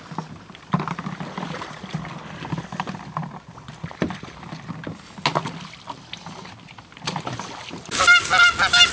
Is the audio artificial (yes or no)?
no